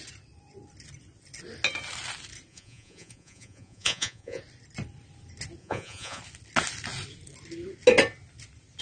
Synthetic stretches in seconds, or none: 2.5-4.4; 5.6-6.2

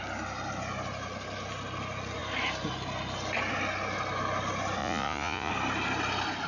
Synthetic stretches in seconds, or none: 4.8-5.5

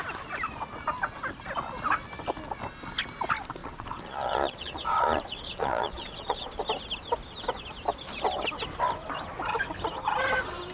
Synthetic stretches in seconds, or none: 3.6-6.6

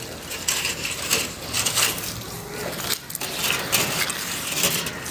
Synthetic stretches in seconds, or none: none